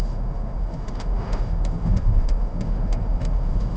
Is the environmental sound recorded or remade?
remade